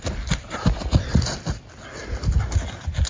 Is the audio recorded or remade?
recorded